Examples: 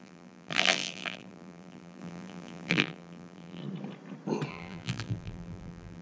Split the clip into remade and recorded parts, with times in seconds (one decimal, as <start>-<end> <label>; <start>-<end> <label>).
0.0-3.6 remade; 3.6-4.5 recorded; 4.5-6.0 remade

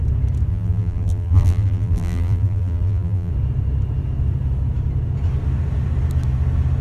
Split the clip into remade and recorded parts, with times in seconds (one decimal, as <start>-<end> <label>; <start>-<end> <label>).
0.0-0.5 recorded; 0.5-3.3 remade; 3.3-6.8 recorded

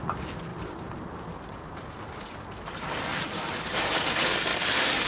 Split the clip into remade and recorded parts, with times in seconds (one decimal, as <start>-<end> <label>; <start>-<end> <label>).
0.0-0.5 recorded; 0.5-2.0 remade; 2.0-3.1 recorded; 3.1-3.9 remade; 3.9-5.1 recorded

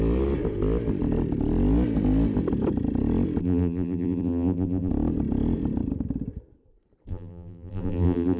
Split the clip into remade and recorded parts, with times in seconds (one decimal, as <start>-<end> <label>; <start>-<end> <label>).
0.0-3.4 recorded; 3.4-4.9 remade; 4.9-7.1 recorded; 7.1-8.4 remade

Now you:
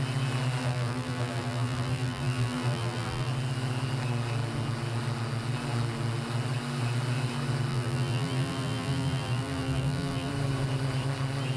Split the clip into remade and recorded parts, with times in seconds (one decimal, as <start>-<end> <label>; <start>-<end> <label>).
0.0-0.6 recorded; 0.6-3.3 remade; 3.3-7.7 recorded; 7.7-10.3 remade; 10.3-11.6 recorded